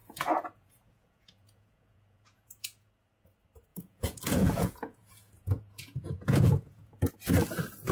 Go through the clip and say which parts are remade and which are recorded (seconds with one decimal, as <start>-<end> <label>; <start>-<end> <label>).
0.0-2.9 remade; 2.9-3.7 recorded; 3.7-7.1 remade; 7.1-7.9 recorded